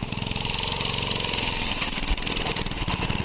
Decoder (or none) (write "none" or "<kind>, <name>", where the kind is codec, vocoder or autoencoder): none